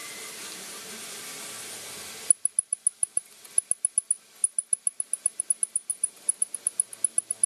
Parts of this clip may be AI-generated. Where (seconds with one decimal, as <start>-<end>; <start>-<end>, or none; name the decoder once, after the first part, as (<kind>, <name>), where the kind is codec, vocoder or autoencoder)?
0.0-0.9 (vocoder, BigVGAN v2); 5.9-6.6